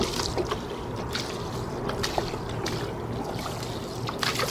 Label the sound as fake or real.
real